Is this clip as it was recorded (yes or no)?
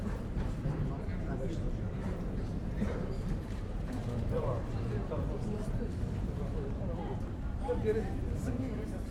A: no